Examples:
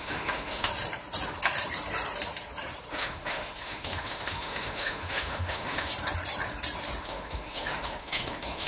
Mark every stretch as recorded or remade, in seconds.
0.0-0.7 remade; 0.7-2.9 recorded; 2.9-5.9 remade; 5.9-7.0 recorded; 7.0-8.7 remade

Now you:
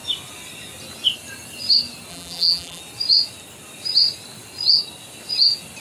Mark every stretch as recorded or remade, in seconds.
0.0-2.1 recorded; 2.1-2.8 remade; 2.8-5.8 recorded

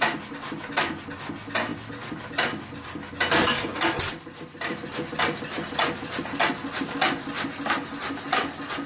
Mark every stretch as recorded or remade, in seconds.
0.0-8.9 recorded

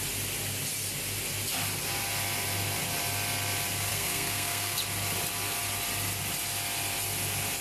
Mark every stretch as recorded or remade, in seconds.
0.0-3.9 recorded; 3.9-4.8 remade; 4.8-7.6 recorded

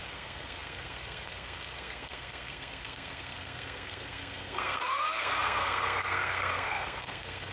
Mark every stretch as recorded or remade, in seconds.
0.0-7.5 remade

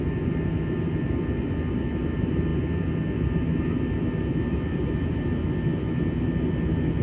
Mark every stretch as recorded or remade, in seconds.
0.0-7.0 recorded

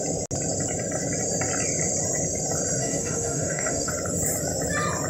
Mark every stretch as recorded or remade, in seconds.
0.0-2.8 recorded; 2.8-3.9 remade; 3.9-5.1 recorded